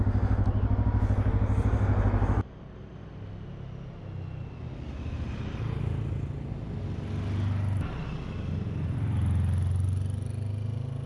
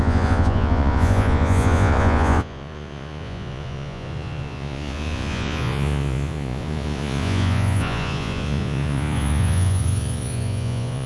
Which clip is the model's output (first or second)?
second